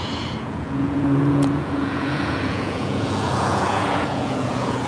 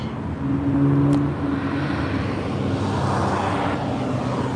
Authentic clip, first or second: second